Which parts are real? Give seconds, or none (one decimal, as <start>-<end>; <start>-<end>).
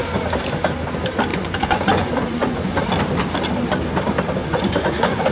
0.0-1.3; 2.8-4.4